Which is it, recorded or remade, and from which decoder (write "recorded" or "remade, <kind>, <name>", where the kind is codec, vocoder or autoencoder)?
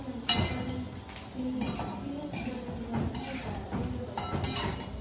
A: recorded